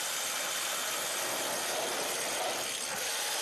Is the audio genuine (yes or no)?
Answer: yes